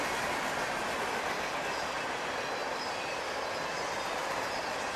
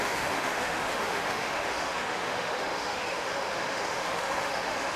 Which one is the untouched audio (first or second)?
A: first